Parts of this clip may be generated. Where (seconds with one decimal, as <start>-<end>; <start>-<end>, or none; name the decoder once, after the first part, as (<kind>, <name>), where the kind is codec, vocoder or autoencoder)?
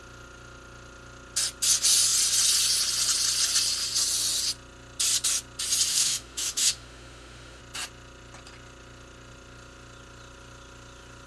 5.9-7.6 (autoencoder, DAC-VAE)